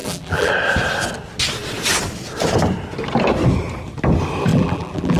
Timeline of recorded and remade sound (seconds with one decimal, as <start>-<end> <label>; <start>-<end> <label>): 0.0-0.5 remade; 0.5-4.5 recorded; 4.5-5.2 remade